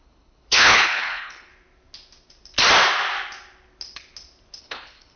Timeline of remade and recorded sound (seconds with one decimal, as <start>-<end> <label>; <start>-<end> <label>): 0.0-1.5 remade; 1.5-4.6 recorded; 4.6-5.2 remade

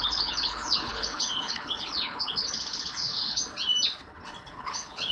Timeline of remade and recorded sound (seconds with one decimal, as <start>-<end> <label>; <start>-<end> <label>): 0.0-3.4 remade; 3.4-4.5 recorded; 4.5-5.1 remade

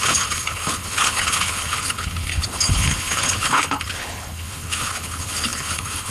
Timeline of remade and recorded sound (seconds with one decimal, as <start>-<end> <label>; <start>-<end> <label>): 0.0-6.1 remade

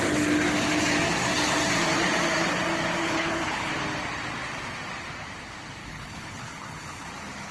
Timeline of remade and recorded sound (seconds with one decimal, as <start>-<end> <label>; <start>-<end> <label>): 0.0-3.0 recorded; 3.0-3.7 remade; 3.7-5.8 recorded; 5.8-7.1 remade; 7.1-7.5 recorded